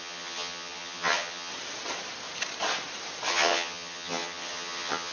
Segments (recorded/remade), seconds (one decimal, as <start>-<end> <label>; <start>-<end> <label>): 0.0-1.5 remade; 1.5-3.3 recorded; 3.3-5.1 remade